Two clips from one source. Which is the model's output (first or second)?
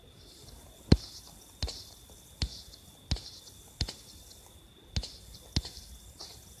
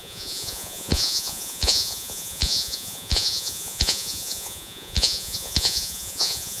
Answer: second